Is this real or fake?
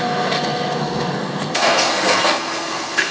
fake